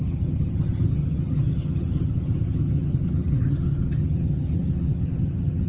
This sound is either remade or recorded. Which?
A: remade